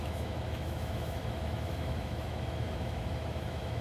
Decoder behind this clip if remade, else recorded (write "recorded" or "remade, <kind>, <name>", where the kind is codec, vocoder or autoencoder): remade, autoencoder, DAC-VAE